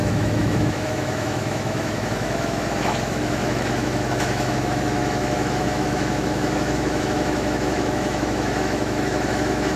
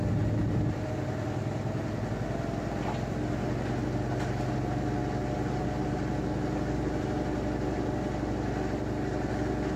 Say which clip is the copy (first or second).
first